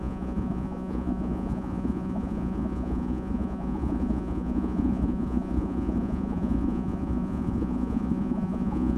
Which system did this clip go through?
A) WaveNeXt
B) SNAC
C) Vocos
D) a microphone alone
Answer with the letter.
C